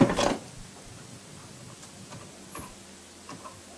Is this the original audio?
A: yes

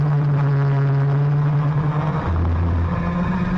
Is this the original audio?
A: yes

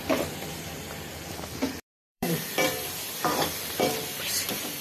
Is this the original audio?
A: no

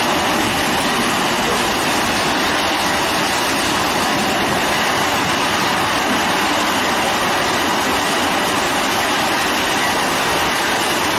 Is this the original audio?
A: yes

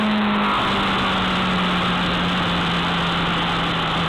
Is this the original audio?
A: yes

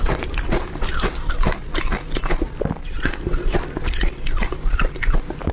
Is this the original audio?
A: yes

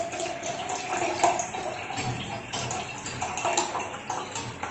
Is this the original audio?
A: yes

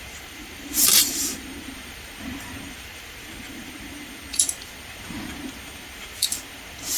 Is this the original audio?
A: no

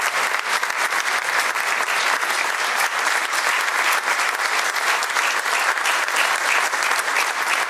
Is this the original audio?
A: yes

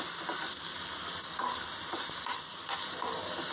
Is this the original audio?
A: yes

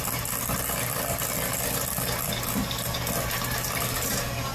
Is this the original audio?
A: yes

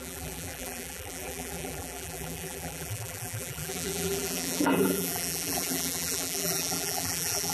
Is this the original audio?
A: no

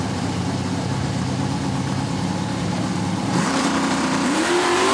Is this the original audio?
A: no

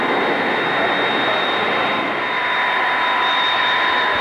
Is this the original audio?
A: yes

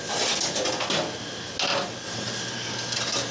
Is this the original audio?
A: yes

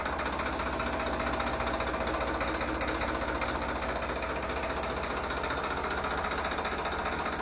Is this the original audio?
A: yes